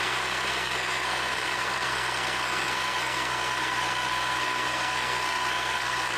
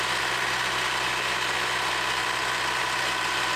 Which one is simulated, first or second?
first